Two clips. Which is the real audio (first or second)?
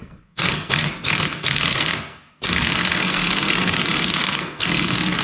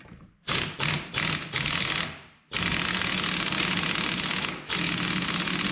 second